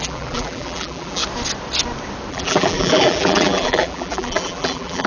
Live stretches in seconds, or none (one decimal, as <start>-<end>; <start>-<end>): 1.2-2.3